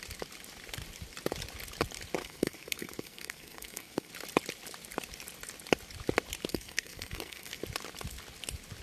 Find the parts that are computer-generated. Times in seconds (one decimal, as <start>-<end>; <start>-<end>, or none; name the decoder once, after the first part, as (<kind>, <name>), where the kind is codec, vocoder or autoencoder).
2.2-4.1 (codec, SNAC); 6.5-7.6